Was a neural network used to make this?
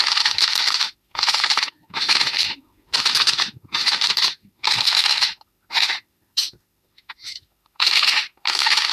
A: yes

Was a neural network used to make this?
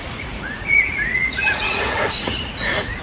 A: yes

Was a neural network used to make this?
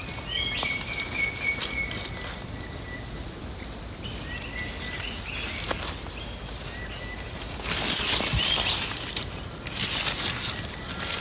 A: no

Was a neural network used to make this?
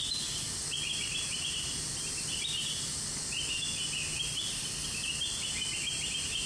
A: no